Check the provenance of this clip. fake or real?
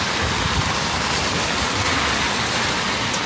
real